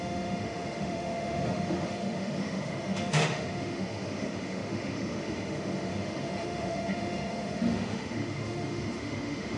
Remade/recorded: remade